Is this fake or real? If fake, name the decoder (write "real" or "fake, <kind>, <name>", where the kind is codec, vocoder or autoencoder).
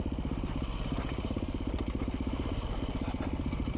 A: real